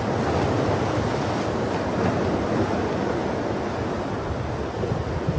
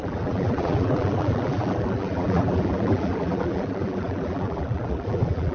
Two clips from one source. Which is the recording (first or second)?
first